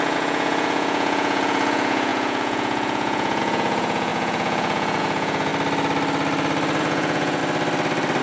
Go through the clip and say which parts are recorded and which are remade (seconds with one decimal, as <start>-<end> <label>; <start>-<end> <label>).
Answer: 0.0-5.5 remade; 5.5-6.8 recorded; 6.8-7.4 remade; 7.4-8.2 recorded